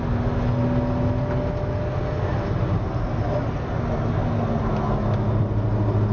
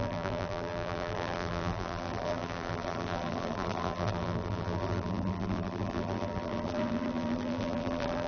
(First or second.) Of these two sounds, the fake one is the second